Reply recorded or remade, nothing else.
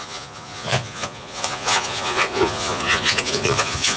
remade